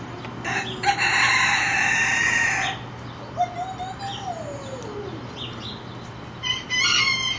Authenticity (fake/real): real